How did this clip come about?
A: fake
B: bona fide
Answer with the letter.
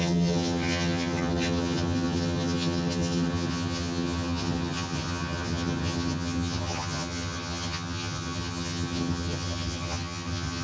A